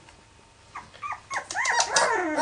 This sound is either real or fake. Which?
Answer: real